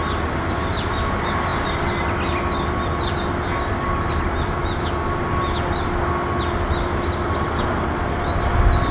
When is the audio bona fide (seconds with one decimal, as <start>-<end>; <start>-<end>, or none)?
0.0-8.9